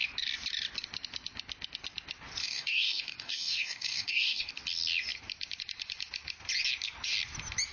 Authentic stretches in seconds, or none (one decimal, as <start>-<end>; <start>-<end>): 0.0-2.4; 4.5-7.7